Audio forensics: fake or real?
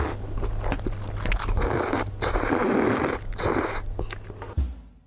real